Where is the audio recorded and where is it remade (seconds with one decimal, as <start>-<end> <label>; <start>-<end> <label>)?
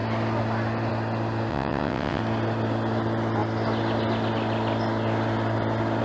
0.0-1.5 recorded; 1.5-2.2 remade; 2.2-6.0 recorded